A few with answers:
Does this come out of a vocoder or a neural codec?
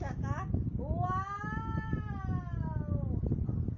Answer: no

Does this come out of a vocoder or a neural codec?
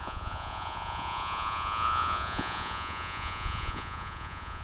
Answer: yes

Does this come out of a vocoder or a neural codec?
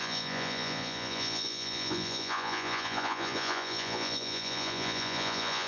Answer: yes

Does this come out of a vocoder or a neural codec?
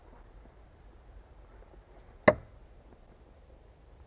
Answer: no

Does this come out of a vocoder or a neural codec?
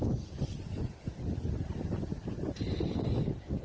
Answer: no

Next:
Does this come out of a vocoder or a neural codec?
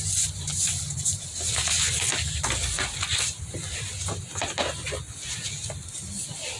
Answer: no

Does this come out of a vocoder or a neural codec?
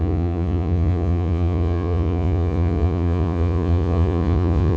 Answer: yes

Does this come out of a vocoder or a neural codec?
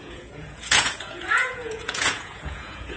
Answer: yes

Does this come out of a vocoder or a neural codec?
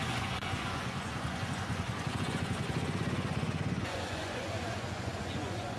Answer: yes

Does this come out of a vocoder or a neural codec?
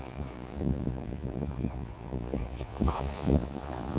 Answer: yes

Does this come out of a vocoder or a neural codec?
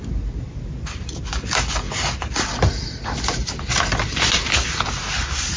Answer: no